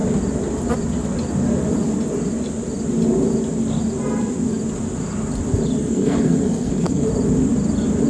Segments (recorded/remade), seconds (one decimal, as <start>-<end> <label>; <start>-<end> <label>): 0.0-5.8 recorded; 5.8-7.1 remade; 7.1-8.1 recorded